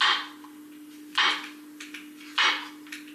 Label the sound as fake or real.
real